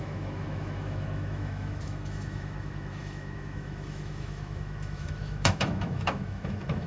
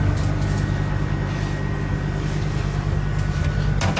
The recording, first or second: second